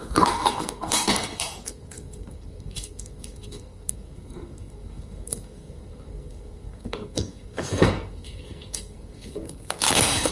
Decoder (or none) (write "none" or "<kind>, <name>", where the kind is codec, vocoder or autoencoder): codec, SNAC